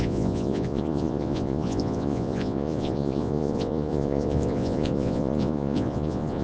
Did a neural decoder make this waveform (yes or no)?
yes